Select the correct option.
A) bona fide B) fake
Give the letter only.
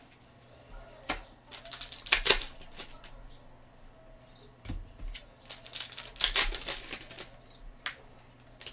A